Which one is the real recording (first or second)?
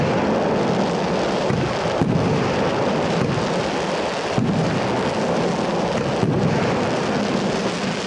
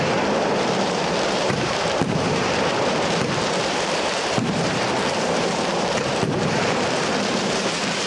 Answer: first